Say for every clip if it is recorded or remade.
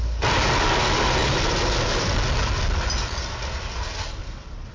recorded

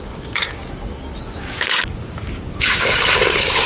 remade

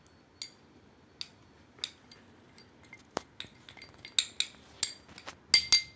recorded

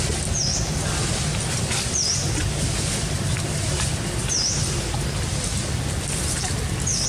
recorded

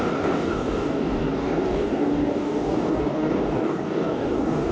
remade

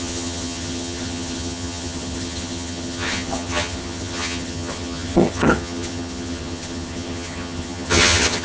remade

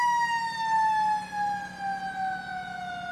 recorded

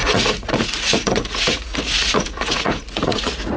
remade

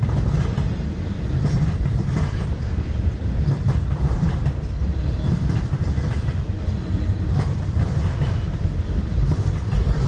remade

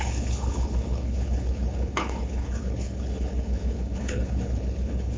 remade